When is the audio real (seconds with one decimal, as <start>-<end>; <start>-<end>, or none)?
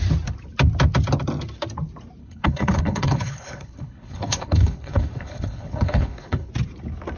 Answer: 0.0-2.2; 6.5-7.2